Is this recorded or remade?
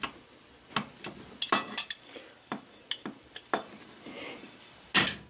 recorded